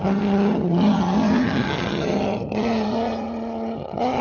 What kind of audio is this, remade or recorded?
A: remade